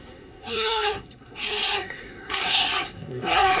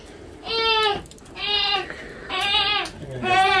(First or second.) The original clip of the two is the second